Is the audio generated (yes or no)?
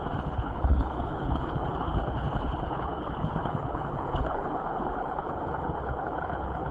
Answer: yes